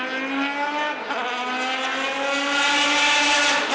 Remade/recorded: recorded